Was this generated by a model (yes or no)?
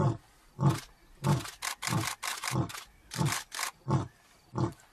no